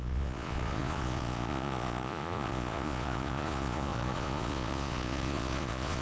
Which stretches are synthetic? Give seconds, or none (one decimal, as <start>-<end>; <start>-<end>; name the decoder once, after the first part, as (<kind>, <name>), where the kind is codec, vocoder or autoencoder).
0.0-6.0 (vocoder, Vocos)